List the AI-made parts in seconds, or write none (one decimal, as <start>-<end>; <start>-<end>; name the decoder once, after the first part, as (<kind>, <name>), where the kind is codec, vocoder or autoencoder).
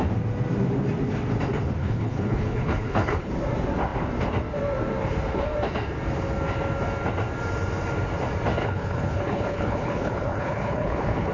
1.8-3.3 (codec, HILCodec); 8.6-11.3